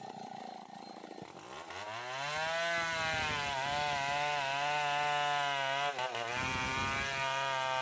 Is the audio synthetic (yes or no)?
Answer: no